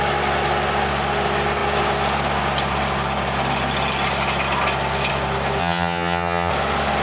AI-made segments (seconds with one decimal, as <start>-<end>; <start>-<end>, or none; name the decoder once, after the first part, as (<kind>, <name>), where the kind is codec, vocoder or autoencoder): 5.6-6.5 (vocoder, HiFi-GAN)